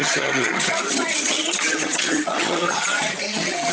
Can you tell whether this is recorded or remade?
remade